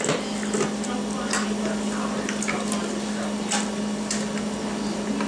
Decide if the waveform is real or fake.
real